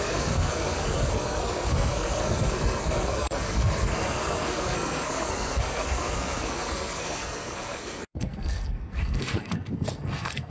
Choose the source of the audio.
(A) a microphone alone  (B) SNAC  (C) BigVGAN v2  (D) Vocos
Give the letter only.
B